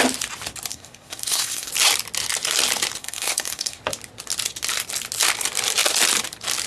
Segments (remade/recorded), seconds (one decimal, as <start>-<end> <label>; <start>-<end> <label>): 0.0-0.7 recorded; 0.7-1.7 remade; 1.7-3.0 recorded; 3.0-3.8 remade; 3.8-6.7 recorded